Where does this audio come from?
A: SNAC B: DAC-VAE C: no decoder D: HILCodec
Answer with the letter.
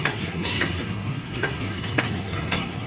A